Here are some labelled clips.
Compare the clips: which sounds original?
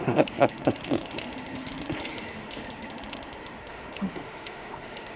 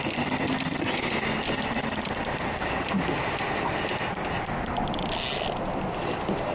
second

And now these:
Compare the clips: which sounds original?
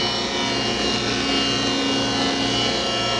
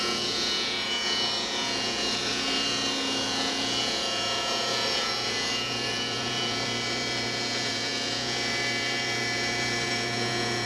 first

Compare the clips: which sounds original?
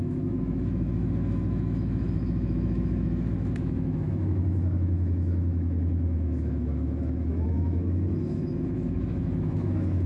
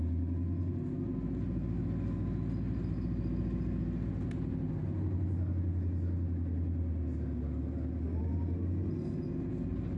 second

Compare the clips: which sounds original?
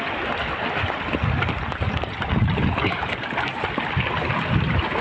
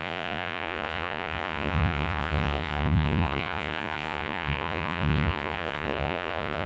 first